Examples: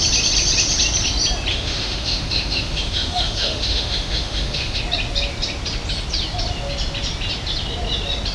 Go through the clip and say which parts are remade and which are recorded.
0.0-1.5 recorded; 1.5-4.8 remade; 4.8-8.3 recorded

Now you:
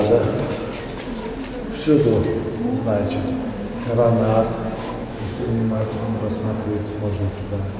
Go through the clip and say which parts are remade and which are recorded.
0.0-5.1 recorded; 5.1-6.2 remade; 6.2-7.8 recorded

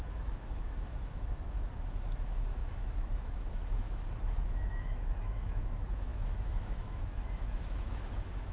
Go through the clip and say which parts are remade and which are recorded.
0.0-8.5 remade

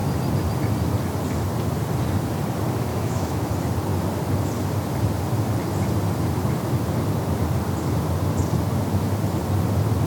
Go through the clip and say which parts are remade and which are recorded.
0.0-2.9 recorded; 2.9-3.5 remade; 3.5-10.1 recorded